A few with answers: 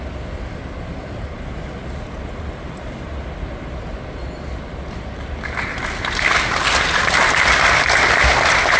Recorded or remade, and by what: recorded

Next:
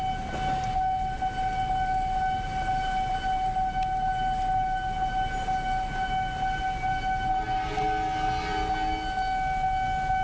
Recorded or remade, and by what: recorded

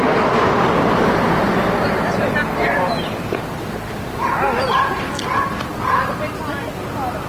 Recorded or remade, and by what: recorded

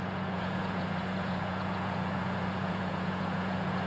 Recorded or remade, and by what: remade, vocoder, Vocos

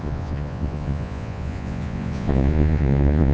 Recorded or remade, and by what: remade, vocoder, Vocos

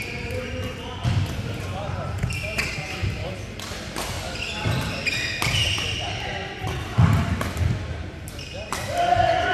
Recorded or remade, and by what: recorded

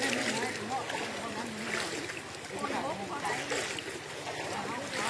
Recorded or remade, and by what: recorded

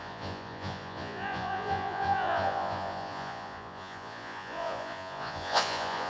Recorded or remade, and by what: remade, vocoder, Vocos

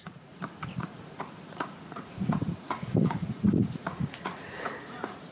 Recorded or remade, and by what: remade, vocoder, Vocos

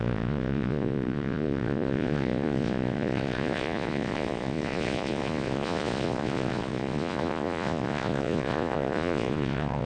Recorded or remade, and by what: remade, vocoder, Vocos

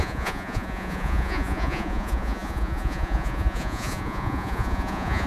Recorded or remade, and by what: remade, vocoder, Vocos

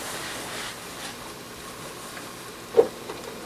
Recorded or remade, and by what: recorded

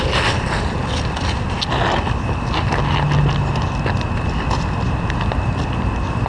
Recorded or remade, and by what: recorded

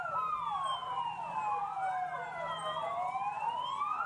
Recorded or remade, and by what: recorded